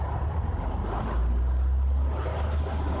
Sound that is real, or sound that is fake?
real